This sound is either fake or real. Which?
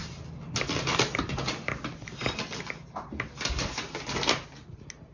real